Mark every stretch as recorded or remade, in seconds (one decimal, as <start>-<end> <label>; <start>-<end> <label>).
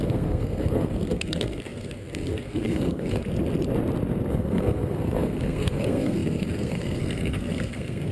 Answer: 0.0-3.2 remade; 3.2-4.3 recorded; 4.3-8.1 remade